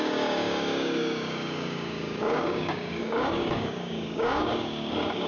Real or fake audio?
fake